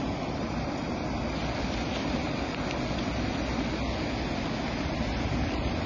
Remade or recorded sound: recorded